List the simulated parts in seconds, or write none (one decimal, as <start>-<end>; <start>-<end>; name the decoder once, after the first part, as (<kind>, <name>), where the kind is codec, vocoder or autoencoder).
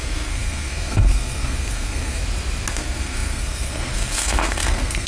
0.0-2.2 (codec, SNAC); 2.7-5.1